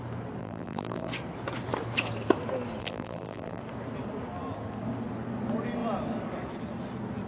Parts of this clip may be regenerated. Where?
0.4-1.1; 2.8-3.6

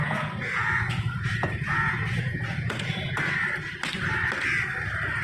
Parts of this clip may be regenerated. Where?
0.0-3.1

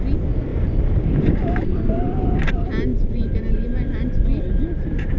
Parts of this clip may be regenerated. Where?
0.5-1.3; 2.9-4.4

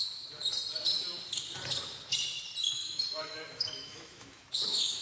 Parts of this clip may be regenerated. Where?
2.6-5.0

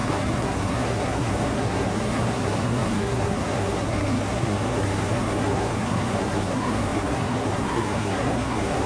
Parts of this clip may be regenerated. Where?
0.0-8.9

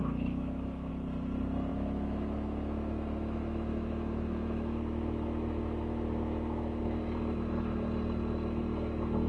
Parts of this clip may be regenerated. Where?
0.0-0.9; 1.7-6.8